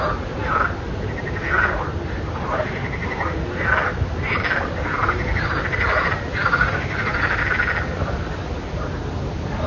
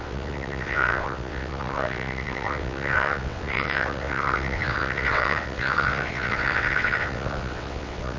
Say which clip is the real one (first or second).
first